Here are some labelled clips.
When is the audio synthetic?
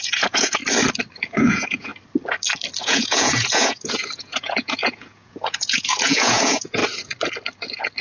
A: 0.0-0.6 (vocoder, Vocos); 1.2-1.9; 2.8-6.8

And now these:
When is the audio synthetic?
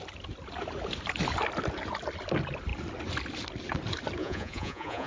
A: 4.2-5.1 (vocoder, Vocos)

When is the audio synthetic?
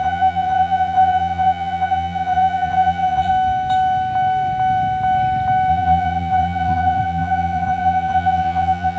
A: 0.0-3.3 (vocoder, Vocos); 5.7-9.0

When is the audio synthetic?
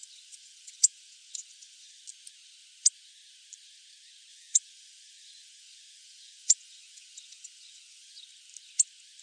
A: 0.0-2.0 (vocoder, Vocos); 4.3-8.2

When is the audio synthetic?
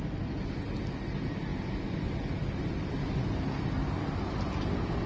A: none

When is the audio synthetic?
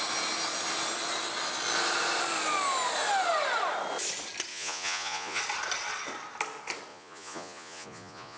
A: 4.5-5.4 (vocoder, Vocos); 6.9-8.4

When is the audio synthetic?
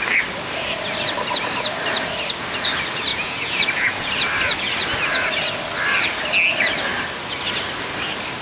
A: 3.1-4.1 (vocoder, Vocos)